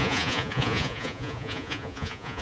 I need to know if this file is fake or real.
fake